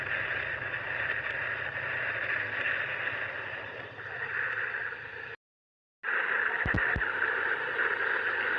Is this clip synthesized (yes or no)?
no